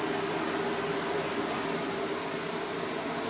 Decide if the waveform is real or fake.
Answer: real